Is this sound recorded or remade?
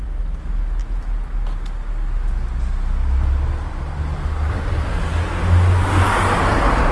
recorded